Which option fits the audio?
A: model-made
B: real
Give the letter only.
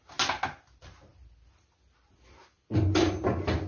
B